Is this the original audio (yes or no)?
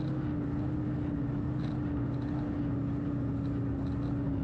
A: yes